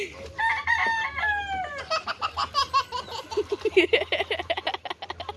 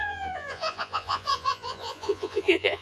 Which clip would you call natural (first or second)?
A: first